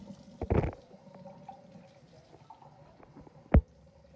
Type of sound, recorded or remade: recorded